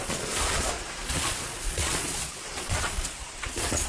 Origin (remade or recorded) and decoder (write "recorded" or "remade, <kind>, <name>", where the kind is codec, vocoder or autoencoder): remade, vocoder, Vocos